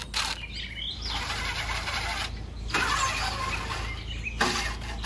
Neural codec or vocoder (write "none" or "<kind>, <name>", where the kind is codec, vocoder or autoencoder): none